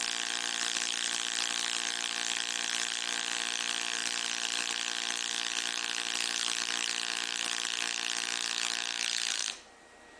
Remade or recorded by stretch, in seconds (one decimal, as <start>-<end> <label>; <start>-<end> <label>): 0.0-9.4 recorded; 9.4-10.2 remade